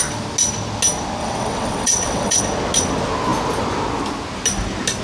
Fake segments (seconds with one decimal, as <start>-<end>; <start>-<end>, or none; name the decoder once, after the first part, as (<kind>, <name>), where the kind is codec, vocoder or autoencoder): 1.2-2.4 (vocoder, WaveNeXt)